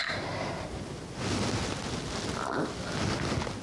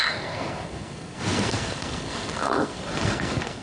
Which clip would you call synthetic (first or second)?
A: second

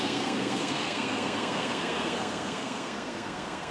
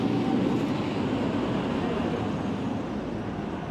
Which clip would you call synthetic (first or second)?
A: first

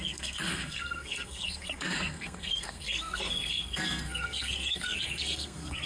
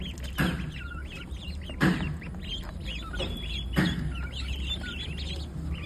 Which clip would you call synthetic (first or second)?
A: first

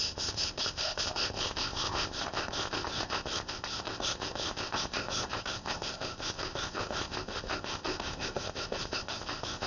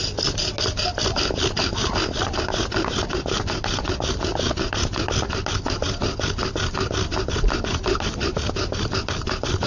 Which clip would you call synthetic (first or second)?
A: first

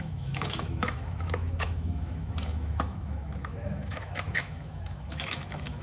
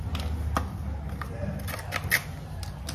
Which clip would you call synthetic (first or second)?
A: first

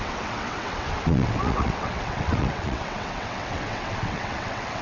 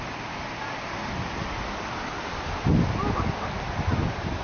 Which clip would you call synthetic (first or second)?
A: first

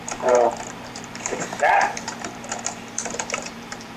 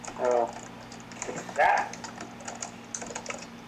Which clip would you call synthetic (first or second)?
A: first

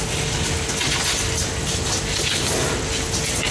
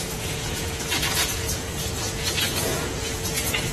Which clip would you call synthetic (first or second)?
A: second